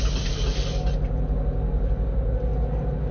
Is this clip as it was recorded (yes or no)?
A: yes